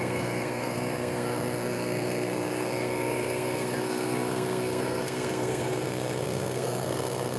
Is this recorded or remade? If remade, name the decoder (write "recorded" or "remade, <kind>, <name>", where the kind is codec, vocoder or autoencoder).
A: remade, codec, SNAC